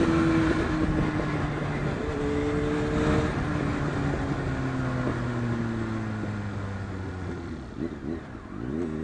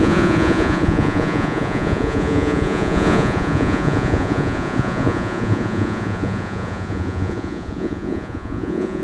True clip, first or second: first